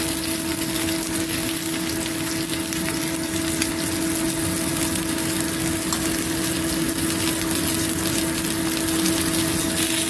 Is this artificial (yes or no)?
no